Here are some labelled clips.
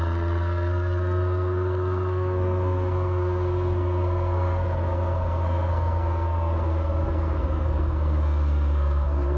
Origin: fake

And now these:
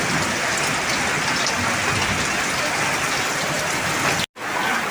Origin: real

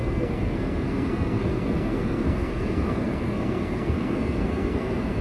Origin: fake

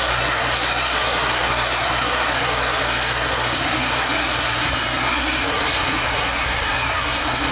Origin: fake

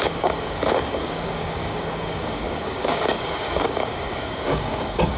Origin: fake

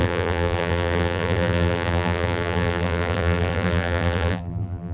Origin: fake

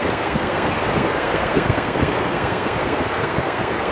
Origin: fake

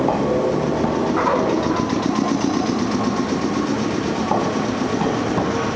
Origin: real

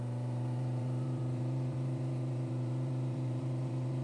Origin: fake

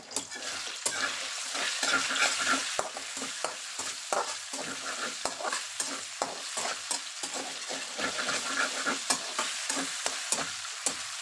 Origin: real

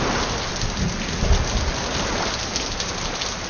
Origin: real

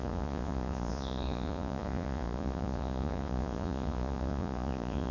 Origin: fake